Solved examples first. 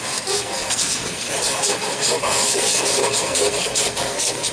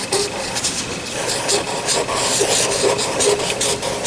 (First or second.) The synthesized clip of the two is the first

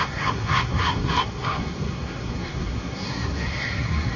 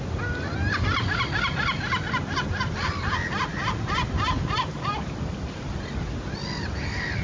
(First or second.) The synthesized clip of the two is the first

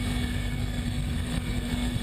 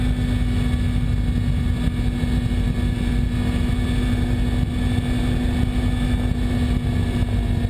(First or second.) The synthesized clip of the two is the first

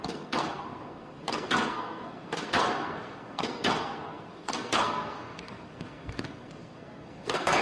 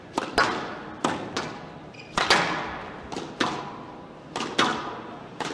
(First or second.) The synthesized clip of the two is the first